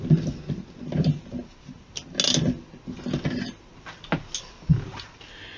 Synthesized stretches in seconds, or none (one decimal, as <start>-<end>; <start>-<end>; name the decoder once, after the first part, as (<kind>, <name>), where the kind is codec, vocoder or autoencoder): none